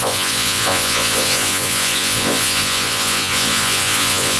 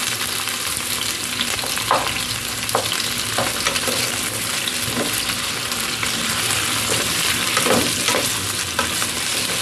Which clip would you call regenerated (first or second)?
first